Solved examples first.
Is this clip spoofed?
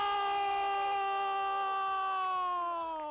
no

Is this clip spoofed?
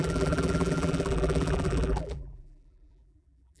yes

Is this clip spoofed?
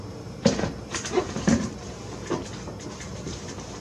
yes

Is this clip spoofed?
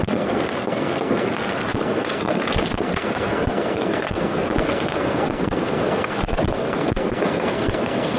yes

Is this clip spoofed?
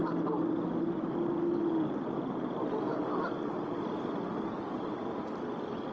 no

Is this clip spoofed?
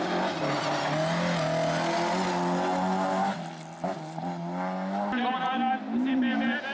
no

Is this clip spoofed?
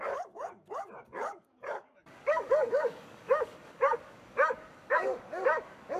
yes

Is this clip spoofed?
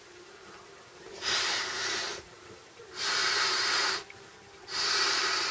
yes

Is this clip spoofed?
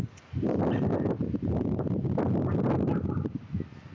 no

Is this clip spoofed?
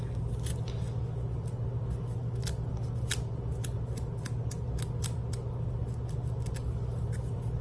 no